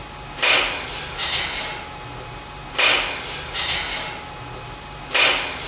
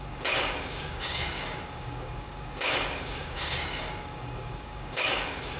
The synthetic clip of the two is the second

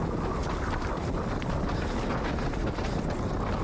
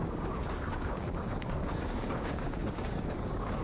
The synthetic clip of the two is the second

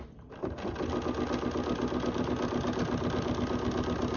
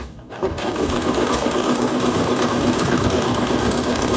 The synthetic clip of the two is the second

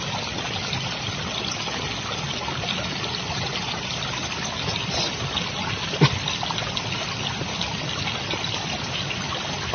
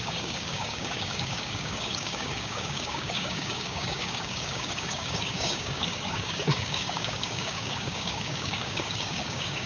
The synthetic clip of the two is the second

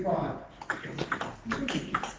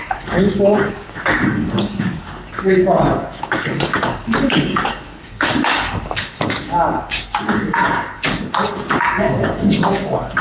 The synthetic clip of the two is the second